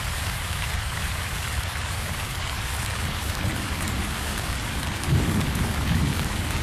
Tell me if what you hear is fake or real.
fake